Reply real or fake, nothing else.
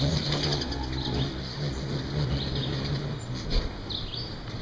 real